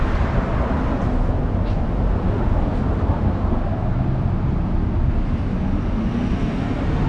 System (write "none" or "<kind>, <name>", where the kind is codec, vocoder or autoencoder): none